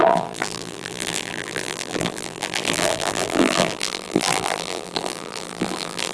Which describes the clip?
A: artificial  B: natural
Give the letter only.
A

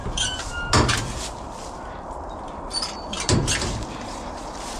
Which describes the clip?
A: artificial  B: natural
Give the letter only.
A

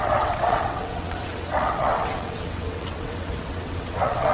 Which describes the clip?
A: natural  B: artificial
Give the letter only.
B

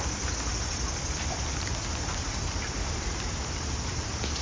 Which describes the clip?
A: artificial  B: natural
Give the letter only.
B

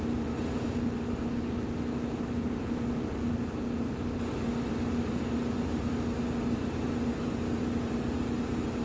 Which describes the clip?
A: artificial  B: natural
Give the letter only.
B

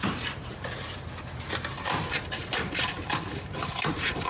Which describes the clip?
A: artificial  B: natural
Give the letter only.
A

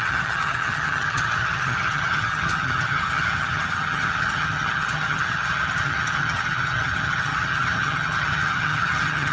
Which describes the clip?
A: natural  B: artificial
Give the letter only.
B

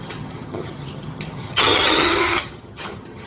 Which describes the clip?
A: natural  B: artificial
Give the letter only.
B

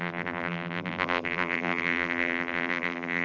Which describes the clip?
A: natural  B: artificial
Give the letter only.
B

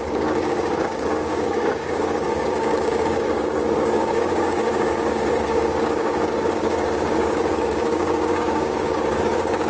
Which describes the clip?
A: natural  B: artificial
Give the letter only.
B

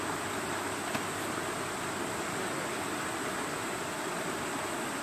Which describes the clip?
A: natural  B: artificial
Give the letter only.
A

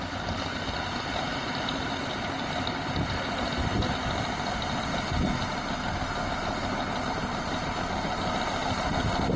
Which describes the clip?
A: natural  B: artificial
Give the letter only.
A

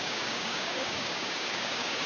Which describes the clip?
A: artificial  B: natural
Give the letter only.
A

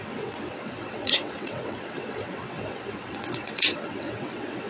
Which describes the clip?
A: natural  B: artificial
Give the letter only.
B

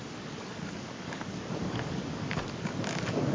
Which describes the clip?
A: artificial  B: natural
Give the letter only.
A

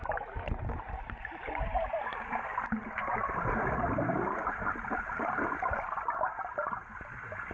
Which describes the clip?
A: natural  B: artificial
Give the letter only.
A